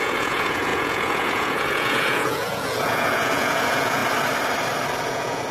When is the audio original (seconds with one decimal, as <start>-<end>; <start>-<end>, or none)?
4.0-5.0